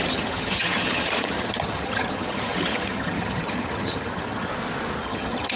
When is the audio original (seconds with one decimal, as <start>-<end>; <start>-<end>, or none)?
4.5-5.0